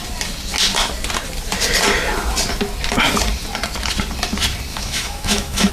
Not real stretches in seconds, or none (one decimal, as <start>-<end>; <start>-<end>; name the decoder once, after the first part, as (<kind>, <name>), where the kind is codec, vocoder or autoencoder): 4.7-5.7 (autoencoder, DAC-VAE)